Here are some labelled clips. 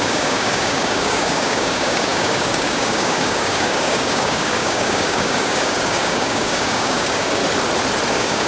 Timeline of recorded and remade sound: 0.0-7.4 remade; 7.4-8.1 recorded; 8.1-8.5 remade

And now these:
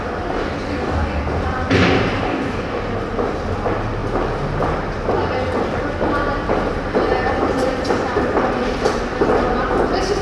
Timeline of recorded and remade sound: 0.0-0.7 recorded; 0.7-1.2 remade; 1.2-2.3 recorded; 2.3-2.8 remade; 2.8-10.2 recorded